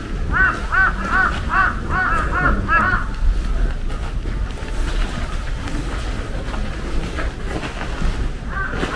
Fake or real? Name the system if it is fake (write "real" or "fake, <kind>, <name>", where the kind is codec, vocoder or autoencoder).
real